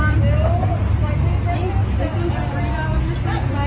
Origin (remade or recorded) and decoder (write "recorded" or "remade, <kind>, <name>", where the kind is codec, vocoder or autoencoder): recorded